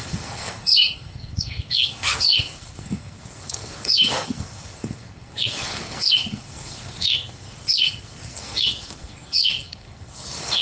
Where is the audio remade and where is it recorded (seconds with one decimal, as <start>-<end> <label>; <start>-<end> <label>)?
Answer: 0.0-10.6 remade

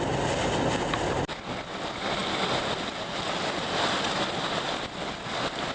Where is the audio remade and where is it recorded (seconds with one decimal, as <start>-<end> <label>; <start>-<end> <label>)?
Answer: 0.0-5.7 recorded

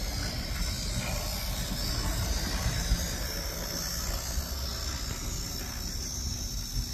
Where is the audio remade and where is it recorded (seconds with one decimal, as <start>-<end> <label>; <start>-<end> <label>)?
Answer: 0.0-6.9 recorded

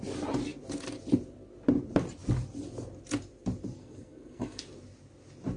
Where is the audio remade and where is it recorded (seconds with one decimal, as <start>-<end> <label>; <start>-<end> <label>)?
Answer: 0.0-3.8 recorded; 3.8-4.6 remade; 4.6-5.6 recorded

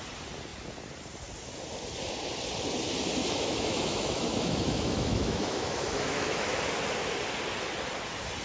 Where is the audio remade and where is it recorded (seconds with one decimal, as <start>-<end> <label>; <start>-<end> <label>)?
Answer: 0.0-3.2 recorded; 3.2-6.6 remade; 6.6-8.4 recorded

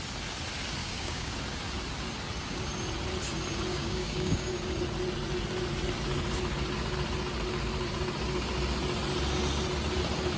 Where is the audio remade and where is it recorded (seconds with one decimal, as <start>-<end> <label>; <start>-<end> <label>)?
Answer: 0.0-0.8 recorded; 0.8-1.3 remade; 1.3-3.7 recorded; 3.7-4.5 remade; 4.5-10.4 recorded